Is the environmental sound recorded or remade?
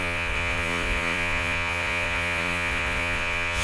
remade